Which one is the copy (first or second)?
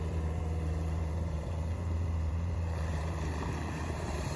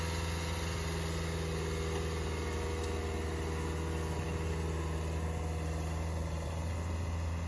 first